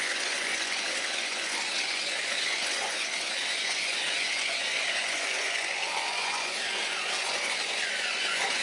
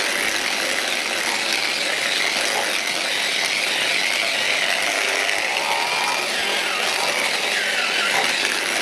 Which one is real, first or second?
second